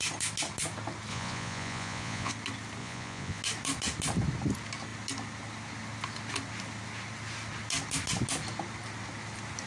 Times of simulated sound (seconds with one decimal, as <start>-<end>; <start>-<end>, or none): 1.1-2.3; 2.8-3.4